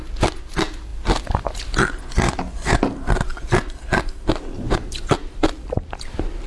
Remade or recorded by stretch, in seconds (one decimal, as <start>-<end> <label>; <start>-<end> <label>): 0.0-6.5 recorded